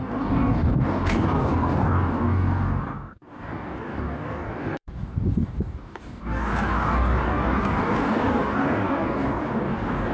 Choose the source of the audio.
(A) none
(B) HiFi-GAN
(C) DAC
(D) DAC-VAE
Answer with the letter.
C